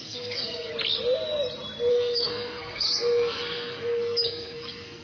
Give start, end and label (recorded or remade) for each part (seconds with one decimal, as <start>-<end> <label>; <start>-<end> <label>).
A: 0.0-0.7 remade; 0.7-1.9 recorded; 1.9-5.0 remade